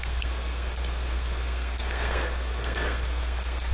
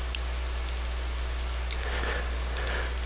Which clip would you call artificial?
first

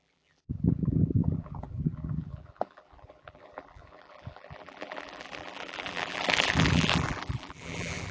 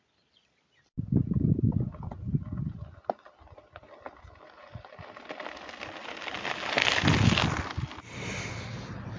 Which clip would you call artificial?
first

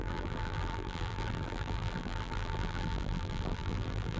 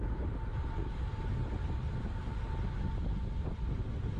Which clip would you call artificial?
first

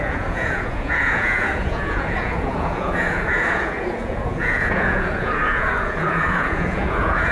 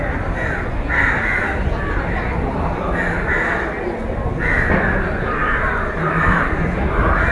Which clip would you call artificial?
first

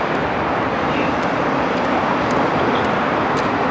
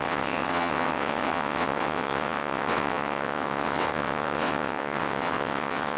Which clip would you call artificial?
second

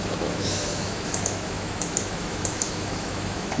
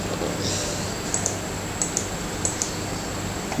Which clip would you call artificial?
first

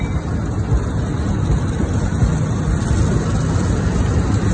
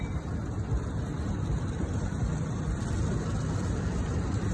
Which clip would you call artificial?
second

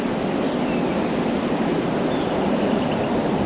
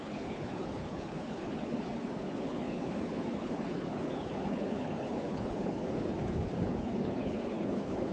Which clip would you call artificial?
second